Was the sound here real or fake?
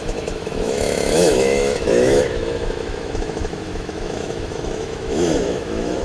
fake